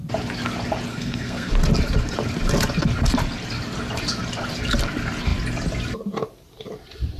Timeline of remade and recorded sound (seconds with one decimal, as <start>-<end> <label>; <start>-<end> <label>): 0.0-0.9 recorded; 0.9-1.5 remade; 1.5-7.2 recorded

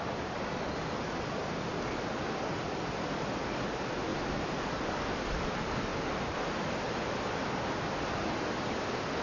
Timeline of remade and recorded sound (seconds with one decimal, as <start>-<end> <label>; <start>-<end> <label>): 0.0-4.1 remade; 4.1-4.9 recorded; 4.9-5.9 remade; 5.9-7.0 recorded; 7.0-9.2 remade